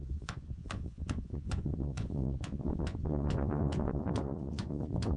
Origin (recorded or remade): remade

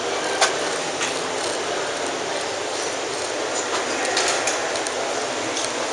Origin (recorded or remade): recorded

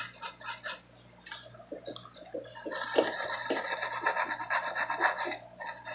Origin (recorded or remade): recorded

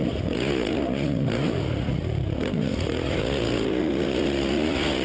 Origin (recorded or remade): remade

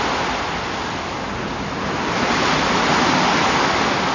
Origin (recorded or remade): recorded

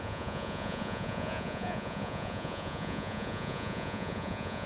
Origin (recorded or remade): remade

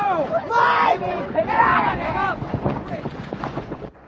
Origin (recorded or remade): remade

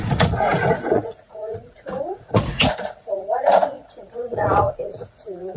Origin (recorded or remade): remade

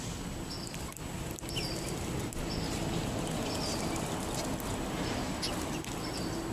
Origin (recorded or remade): recorded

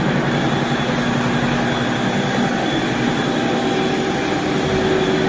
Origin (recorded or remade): recorded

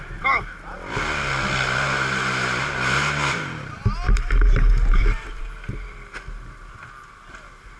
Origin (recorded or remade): recorded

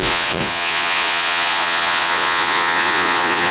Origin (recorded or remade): remade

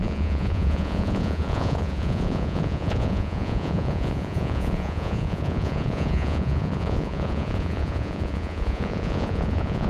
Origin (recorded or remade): remade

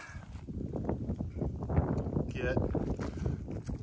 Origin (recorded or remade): recorded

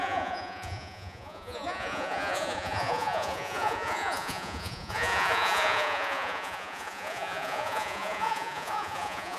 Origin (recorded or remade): remade